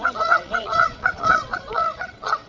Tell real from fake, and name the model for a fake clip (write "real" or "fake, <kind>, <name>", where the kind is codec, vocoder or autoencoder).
fake, vocoder, WaveNeXt